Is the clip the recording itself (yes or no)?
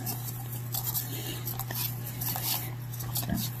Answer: yes